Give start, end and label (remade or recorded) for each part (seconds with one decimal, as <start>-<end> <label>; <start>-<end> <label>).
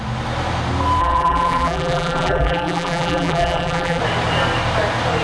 0.0-1.0 recorded; 1.0-4.0 remade; 4.0-5.2 recorded